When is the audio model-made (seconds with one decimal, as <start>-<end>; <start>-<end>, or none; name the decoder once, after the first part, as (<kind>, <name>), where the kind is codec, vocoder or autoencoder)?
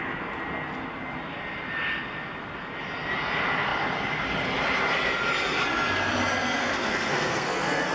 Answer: 6.6-7.9 (codec, SNAC)